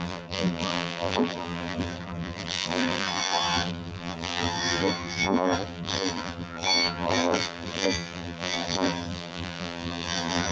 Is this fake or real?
fake